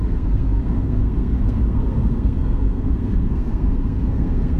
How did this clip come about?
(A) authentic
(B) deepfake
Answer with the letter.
B